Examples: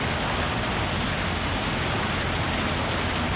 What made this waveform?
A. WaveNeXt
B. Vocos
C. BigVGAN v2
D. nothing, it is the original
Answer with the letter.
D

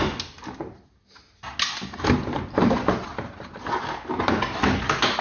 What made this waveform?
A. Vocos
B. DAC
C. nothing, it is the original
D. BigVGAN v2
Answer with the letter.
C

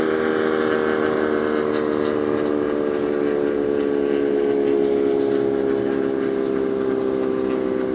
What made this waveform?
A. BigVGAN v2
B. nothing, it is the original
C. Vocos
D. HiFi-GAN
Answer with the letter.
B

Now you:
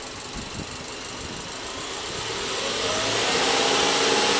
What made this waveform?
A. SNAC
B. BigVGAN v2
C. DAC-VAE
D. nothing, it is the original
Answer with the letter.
D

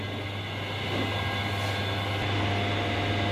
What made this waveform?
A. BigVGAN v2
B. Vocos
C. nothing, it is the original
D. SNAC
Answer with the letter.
C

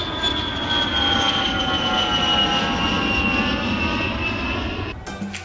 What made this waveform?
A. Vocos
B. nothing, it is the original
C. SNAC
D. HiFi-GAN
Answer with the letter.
B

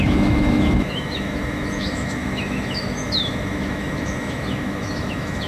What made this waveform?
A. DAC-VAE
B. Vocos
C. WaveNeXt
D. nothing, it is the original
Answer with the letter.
A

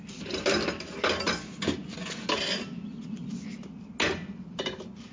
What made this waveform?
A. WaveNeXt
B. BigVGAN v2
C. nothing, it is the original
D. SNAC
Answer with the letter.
C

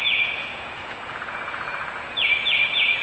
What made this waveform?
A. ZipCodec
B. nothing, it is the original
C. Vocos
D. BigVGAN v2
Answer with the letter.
C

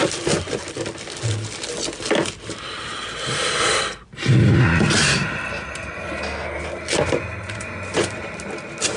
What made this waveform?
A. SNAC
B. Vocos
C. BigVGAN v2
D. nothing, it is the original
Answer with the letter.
D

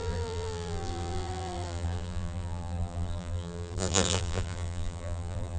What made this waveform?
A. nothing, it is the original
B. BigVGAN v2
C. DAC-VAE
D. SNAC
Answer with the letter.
B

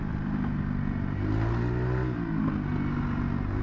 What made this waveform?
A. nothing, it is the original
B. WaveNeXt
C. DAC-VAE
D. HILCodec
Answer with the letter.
A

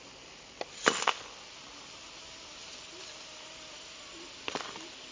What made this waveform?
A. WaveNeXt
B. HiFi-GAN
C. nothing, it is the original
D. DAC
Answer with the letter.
C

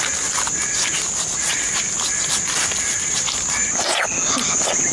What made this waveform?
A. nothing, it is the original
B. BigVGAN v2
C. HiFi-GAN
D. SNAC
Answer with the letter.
A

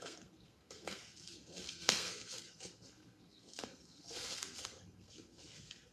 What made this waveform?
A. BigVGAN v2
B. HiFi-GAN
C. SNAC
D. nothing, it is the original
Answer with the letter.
C